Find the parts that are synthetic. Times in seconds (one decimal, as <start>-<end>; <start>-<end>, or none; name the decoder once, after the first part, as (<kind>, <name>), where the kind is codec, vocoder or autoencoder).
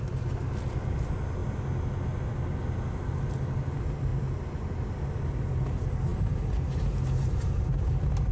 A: none